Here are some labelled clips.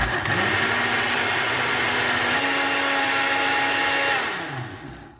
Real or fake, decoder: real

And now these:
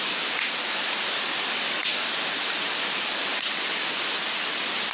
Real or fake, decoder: real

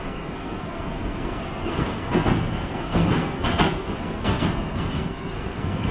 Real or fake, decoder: fake, codec, SNAC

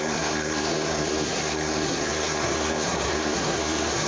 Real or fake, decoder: fake, codec, SNAC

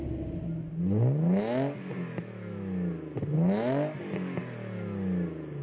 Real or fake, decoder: real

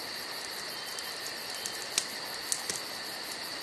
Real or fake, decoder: real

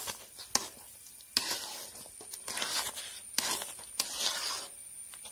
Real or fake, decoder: real